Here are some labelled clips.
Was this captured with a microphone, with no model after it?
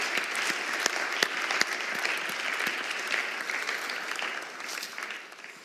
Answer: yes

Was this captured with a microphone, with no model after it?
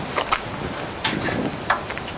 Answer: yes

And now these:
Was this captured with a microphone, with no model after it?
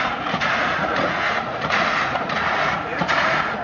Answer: no